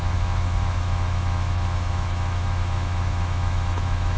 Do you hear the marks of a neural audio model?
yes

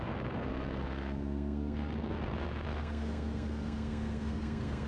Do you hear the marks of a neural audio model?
yes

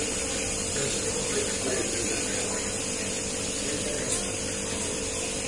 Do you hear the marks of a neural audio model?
no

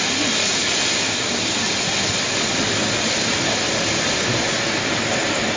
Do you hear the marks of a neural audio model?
no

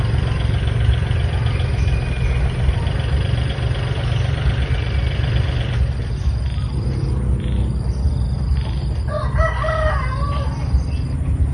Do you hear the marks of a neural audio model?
no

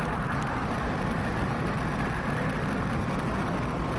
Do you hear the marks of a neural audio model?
no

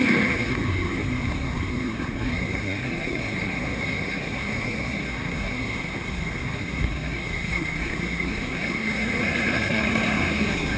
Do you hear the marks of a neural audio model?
yes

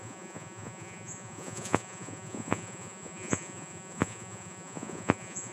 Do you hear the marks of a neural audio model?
yes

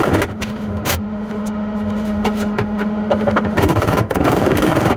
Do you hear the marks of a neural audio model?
yes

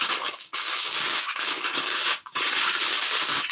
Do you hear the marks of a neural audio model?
yes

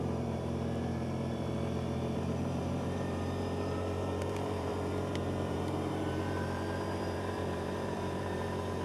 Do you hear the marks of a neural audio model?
yes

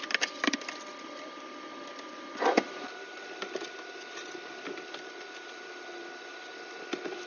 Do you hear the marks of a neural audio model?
no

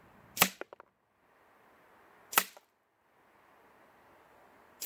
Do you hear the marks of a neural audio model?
no